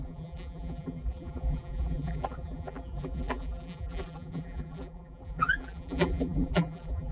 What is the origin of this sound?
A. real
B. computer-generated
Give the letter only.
B